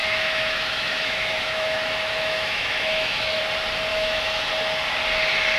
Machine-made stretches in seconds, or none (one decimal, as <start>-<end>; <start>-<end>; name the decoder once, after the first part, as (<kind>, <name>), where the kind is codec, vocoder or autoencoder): 0.0-3.4 (autoencoder, DAC-VAE); 3.9-4.5